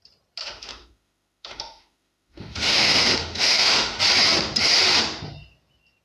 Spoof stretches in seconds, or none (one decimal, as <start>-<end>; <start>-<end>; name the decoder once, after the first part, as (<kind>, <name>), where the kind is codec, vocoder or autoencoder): 0.4-4.0 (autoencoder, DAC-VAE)